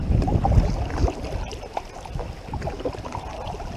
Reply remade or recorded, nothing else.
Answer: recorded